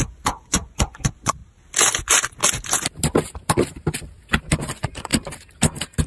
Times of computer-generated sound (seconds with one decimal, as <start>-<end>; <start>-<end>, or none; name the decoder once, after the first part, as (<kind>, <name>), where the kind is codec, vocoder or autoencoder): 0.0-1.4 (vocoder, Vocos); 4.6-5.1